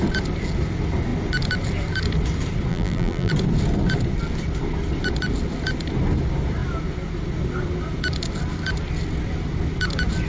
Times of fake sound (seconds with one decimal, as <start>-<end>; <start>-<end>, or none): 2.7-3.3